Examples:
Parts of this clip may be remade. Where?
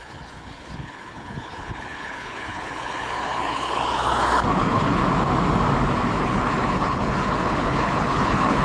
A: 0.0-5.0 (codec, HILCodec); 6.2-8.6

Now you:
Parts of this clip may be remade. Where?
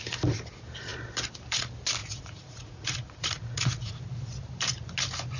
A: 2.0-3.9 (vocoder, Vocos)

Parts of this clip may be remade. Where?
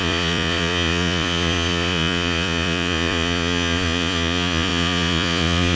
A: 0.0-5.8 (vocoder, Vocos)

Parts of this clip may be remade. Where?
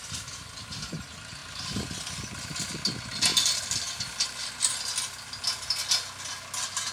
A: none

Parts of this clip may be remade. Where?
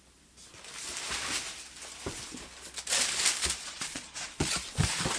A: 3.6-4.5 (vocoder, Vocos)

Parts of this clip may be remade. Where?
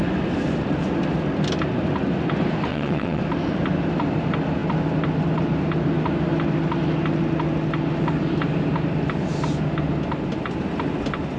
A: 2.7-3.2 (vocoder, WaveNeXt)